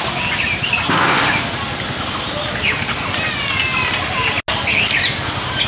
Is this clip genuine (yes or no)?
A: yes